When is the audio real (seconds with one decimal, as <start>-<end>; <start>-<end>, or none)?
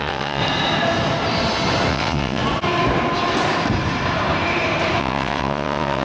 0.4-1.9; 2.4-5.0